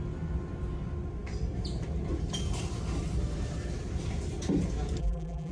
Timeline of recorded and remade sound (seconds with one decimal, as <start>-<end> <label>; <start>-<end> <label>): 0.0-5.0 recorded; 5.0-5.5 remade